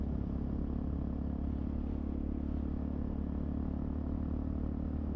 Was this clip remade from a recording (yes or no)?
no